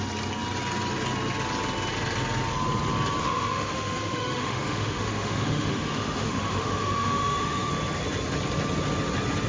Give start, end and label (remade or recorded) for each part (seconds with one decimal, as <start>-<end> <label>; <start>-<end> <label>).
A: 0.0-3.2 recorded; 3.2-7.7 remade; 7.7-9.5 recorded